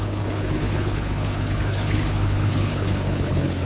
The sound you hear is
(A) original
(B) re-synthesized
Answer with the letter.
B